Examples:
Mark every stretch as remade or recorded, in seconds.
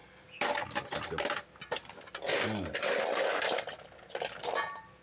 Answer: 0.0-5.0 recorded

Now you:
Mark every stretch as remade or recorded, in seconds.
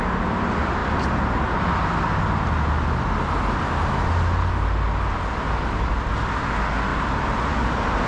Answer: 0.0-6.9 recorded; 6.9-7.6 remade; 7.6-8.1 recorded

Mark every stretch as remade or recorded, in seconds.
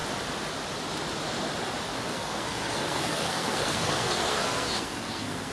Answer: 0.0-2.1 recorded; 2.1-5.5 remade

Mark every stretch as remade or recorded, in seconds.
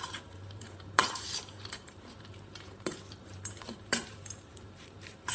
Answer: 0.0-5.3 remade